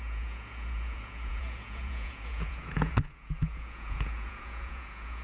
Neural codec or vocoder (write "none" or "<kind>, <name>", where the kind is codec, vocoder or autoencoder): vocoder, Vocos